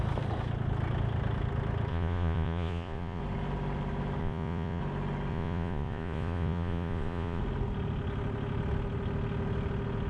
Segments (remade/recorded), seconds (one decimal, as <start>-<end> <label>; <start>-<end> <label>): 0.0-1.9 recorded; 1.9-3.2 remade; 3.2-4.2 recorded; 4.2-4.8 remade; 4.8-5.3 recorded; 5.3-7.4 remade; 7.4-10.1 recorded